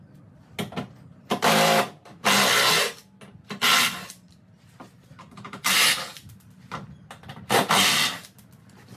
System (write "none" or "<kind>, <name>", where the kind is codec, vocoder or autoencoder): none